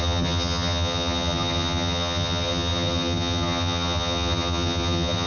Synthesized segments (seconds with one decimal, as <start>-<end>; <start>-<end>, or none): 0.0-5.3